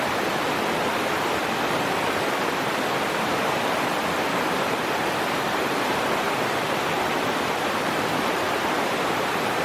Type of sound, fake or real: fake